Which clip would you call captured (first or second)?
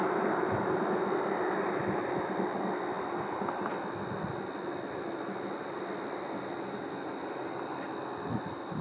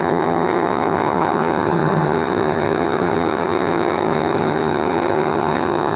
first